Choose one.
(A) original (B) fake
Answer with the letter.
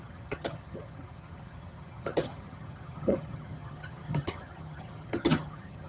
B